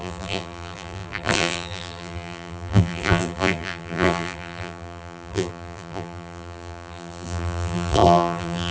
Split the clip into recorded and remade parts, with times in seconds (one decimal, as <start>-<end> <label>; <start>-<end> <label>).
0.0-8.7 remade